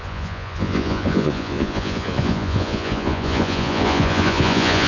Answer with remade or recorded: remade